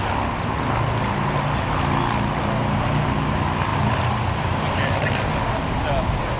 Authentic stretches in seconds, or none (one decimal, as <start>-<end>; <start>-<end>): 0.0-6.4